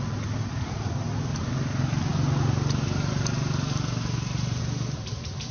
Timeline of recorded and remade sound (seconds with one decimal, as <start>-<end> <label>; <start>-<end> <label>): 0.0-5.5 recorded